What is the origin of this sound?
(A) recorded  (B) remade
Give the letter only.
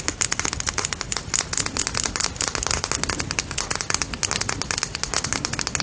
A